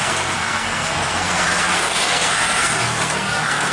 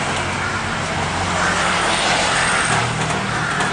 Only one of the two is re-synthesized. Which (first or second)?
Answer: first